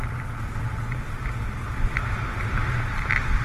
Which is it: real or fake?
real